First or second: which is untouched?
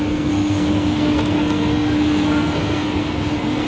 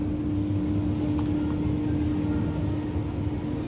second